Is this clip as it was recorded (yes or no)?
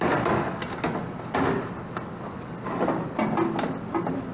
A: yes